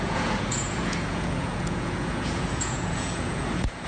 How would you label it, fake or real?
fake